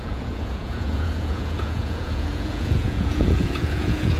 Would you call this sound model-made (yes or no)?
yes